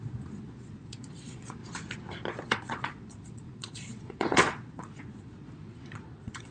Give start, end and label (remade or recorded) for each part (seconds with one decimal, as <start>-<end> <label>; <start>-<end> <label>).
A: 0.0-1.6 remade; 1.6-2.3 recorded; 2.3-6.5 remade